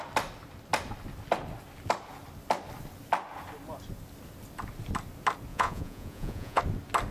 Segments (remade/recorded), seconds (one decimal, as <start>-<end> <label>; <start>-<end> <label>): 0.0-5.5 recorded; 5.5-6.6 remade; 6.6-7.1 recorded